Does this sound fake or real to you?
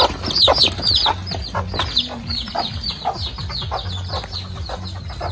real